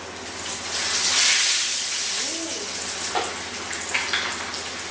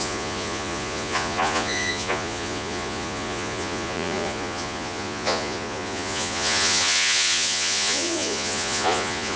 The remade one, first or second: second